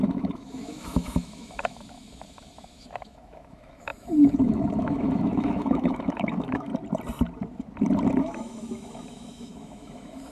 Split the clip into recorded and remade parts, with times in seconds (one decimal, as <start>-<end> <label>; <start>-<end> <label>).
0.0-6.7 remade; 6.7-8.2 recorded; 8.2-10.3 remade